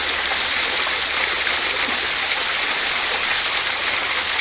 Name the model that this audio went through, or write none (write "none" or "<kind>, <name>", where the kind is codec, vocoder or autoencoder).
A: none